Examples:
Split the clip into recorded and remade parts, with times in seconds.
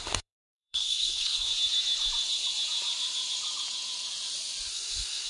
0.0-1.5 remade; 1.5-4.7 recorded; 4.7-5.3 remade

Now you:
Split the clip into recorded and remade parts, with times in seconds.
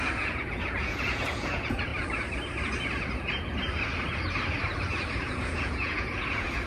0.0-1.9 remade; 1.9-5.1 recorded; 5.1-6.7 remade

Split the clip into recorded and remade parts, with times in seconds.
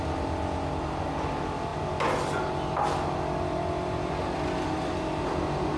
0.0-5.8 recorded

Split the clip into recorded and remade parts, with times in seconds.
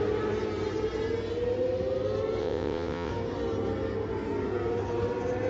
0.0-2.4 recorded; 2.4-3.1 remade; 3.1-5.5 recorded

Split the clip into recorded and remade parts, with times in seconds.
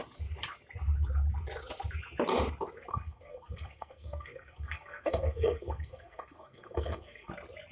0.0-2.9 recorded; 2.9-7.3 remade; 7.3-7.7 recorded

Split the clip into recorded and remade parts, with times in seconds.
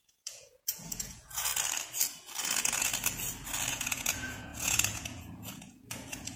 0.0-1.5 remade; 1.5-2.4 recorded; 2.4-2.9 remade; 2.9-3.7 recorded; 3.7-6.4 remade